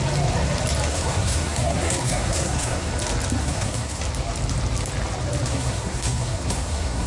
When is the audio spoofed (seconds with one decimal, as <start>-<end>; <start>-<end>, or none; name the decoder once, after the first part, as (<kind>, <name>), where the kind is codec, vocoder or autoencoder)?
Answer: 0.9-2.9 (codec, SNAC); 3.4-4.0; 5.5-7.1